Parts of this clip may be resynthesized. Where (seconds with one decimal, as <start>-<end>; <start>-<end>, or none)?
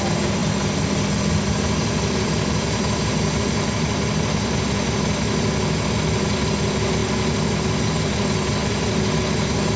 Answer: none